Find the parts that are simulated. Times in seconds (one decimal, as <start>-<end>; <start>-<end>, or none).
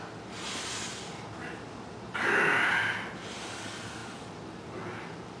none